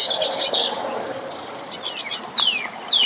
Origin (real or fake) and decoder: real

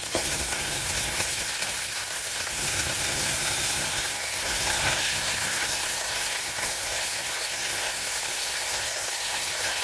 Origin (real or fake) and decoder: fake, codec, SNAC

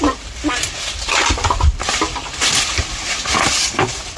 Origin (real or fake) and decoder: real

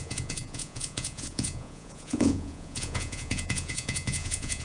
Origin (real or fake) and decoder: fake, vocoder, Vocos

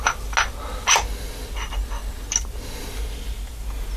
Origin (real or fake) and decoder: real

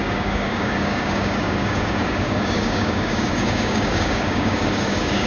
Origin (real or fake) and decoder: fake, codec, DAC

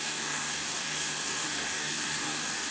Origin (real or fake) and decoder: fake, codec, DAC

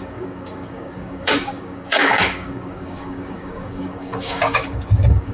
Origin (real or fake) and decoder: fake, codec, DAC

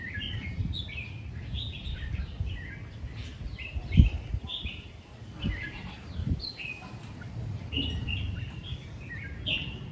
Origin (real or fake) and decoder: fake, vocoder, BigVGAN v2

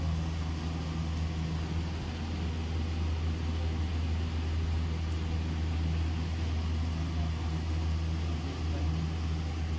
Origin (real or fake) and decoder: real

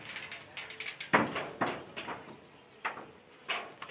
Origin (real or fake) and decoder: real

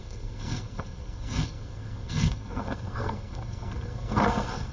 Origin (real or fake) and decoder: fake, codec, SNAC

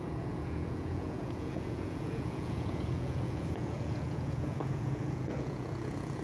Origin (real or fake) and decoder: fake, vocoder, Vocos